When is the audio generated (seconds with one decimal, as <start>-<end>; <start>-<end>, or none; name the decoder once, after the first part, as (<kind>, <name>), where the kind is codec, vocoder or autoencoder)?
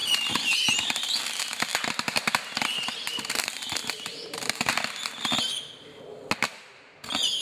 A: 0.0-1.2 (vocoder, BigVGAN v2); 3.8-5.4